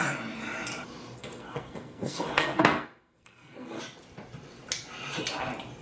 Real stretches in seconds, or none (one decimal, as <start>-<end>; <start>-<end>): 0.0-1.2; 3.8-5.8